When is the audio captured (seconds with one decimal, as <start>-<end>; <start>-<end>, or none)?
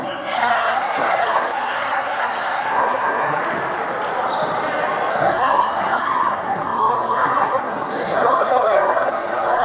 3.4-5.1